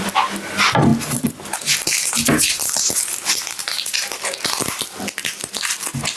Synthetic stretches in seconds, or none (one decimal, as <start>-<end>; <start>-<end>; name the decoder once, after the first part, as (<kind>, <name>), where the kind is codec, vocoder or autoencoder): none